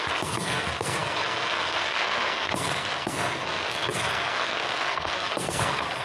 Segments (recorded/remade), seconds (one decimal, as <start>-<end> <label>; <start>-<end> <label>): 0.0-6.0 remade